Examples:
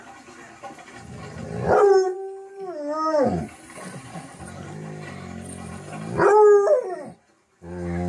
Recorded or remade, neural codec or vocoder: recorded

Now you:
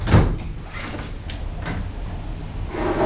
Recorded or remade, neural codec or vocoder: recorded